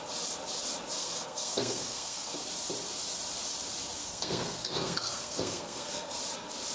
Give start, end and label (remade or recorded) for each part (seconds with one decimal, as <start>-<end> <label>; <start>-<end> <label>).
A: 0.0-1.0 recorded; 1.0-2.4 remade; 2.4-4.0 recorded; 4.0-6.2 remade; 6.2-6.7 recorded